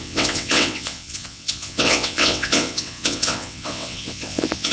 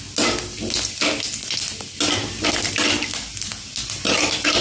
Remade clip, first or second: first